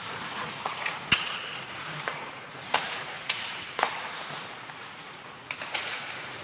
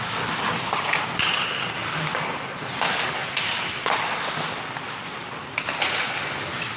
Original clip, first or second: second